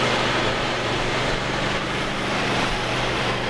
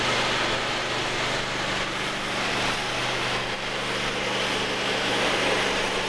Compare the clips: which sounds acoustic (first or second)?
second